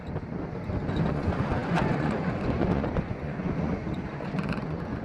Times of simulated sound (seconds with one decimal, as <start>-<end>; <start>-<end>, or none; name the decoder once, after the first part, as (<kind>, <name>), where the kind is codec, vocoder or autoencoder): 0.9-5.0 (vocoder, Vocos)